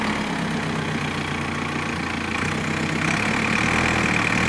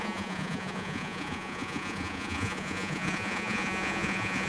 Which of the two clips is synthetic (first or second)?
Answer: second